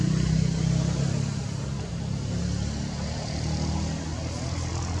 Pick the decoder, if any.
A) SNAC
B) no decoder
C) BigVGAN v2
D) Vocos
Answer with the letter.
B